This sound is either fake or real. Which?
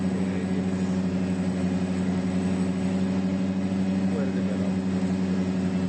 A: real